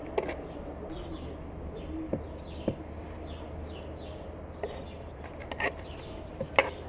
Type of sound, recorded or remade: recorded